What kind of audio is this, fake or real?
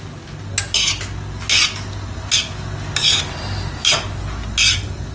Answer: real